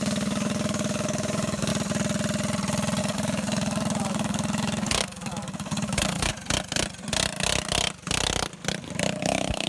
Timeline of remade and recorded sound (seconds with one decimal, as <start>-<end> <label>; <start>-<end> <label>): 0.0-1.7 remade; 1.7-3.0 recorded; 3.0-6.3 remade; 6.3-9.2 recorded; 9.2-9.7 remade